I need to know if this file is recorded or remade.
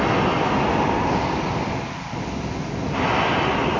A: recorded